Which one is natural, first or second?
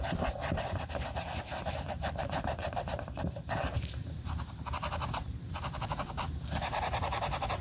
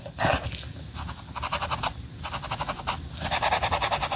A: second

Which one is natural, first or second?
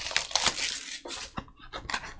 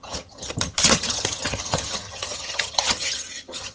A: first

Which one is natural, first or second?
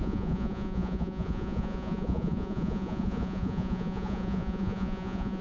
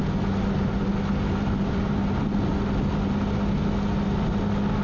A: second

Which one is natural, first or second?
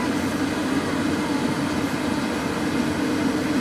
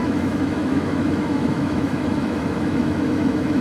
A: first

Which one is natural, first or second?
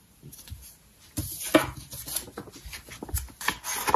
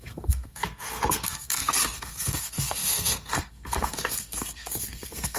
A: first